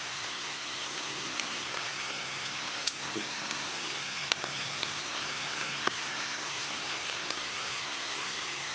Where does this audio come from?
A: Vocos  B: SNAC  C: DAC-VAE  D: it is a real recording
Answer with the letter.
B